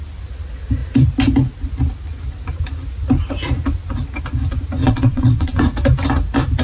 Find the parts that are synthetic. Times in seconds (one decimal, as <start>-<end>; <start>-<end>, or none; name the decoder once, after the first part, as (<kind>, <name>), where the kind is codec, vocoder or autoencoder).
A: 4.8-5.6 (vocoder, WaveNeXt)